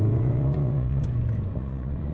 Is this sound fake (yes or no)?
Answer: yes